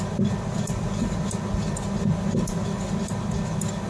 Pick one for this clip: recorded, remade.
recorded